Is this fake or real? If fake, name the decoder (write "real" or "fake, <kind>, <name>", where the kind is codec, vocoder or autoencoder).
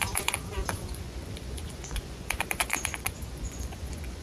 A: fake, vocoder, Vocos